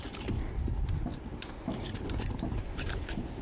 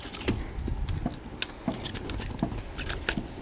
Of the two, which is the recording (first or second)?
second